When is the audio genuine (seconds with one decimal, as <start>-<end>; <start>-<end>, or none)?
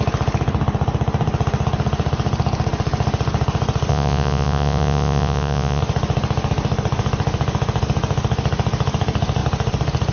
0.0-3.9; 5.8-10.1